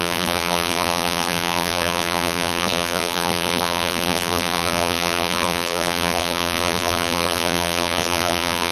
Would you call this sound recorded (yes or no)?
no